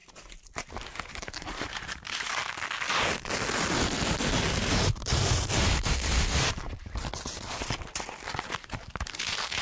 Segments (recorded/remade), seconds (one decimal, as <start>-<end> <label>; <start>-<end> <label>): 0.0-0.6 recorded; 0.6-2.4 remade; 2.4-4.5 recorded; 4.5-7.0 remade; 7.0-8.5 recorded; 8.5-9.6 remade